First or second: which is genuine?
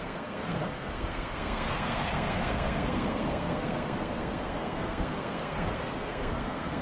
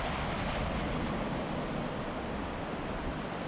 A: second